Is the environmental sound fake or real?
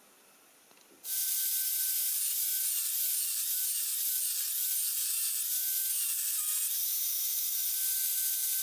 real